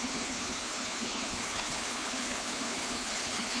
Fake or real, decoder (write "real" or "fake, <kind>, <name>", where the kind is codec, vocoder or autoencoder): fake, codec, HILCodec